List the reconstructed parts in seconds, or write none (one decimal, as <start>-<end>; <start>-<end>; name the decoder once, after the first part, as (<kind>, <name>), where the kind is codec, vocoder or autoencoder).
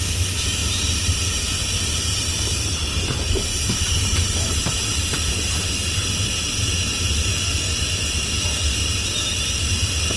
0.6-5.5 (vocoder, BigVGAN v2); 6.0-7.3